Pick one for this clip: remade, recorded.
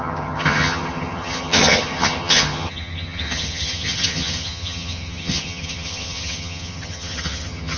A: remade